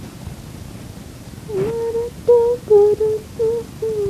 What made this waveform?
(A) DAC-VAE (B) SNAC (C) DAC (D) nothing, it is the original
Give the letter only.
D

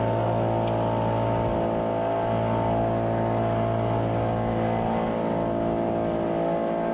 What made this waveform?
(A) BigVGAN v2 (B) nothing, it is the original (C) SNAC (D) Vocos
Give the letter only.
B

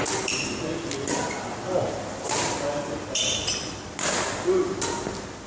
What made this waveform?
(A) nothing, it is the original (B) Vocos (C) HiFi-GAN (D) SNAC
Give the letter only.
A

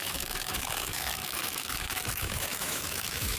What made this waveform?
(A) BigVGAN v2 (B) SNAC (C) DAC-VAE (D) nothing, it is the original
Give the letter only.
C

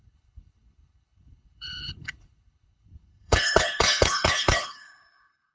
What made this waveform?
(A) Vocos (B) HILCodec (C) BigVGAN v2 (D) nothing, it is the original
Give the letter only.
B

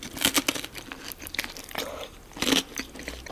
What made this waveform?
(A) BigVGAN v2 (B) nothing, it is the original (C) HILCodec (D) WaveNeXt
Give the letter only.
B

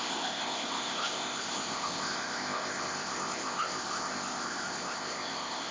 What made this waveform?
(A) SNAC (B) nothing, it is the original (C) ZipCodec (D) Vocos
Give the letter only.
C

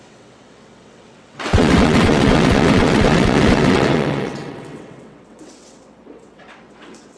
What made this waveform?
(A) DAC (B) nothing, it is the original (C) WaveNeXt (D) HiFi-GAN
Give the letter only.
C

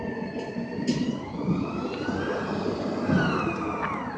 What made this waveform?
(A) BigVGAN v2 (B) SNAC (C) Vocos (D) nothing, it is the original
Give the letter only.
D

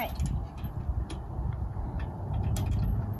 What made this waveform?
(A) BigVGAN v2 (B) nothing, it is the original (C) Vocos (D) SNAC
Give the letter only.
B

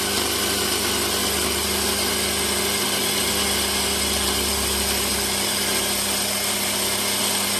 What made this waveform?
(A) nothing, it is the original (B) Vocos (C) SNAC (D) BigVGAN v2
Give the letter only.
A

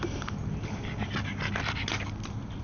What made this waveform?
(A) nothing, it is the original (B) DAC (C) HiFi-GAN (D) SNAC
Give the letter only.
A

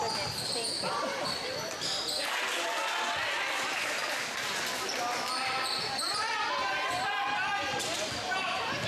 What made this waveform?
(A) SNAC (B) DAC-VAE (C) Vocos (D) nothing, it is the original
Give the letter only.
D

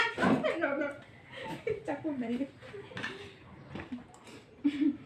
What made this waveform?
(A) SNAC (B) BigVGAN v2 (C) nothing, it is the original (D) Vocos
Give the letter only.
B